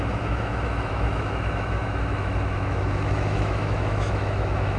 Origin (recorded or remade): remade